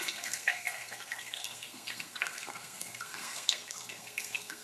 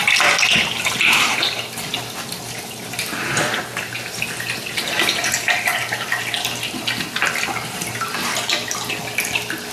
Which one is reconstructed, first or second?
first